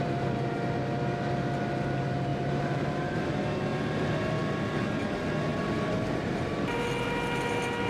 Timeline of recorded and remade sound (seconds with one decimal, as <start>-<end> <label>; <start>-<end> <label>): 0.0-2.3 recorded; 2.3-3.3 remade; 3.3-5.5 recorded; 5.5-6.4 remade; 6.4-7.9 recorded